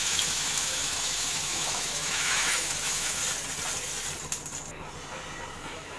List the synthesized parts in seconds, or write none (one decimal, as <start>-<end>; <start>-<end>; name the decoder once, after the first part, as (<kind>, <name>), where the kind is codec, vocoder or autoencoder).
0.0-3.2 (autoencoder, DAC-VAE); 5.5-6.0